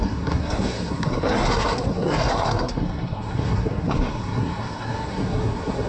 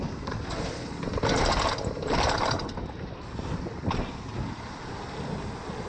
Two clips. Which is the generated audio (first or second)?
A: first